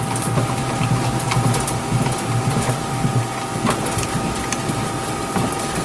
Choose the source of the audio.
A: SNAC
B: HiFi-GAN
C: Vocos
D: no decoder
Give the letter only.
D